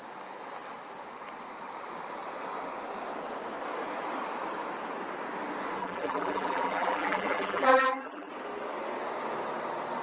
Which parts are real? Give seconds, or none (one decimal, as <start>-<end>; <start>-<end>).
0.0-5.8; 8.3-10.0